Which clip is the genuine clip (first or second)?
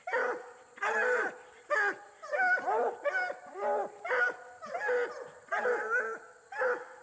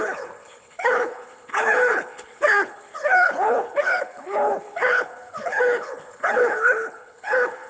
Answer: first